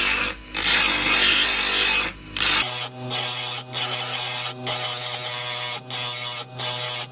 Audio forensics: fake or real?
real